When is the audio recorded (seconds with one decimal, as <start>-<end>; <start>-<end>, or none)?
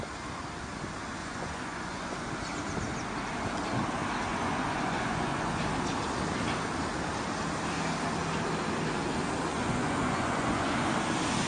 0.0-1.2; 2.3-4.3; 5.6-9.5; 10.9-11.5